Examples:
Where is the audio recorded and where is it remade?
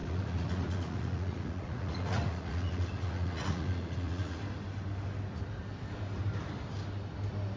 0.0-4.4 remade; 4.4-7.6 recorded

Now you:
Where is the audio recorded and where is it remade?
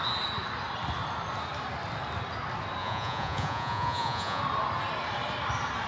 0.0-2.8 recorded; 2.8-4.4 remade; 4.4-5.9 recorded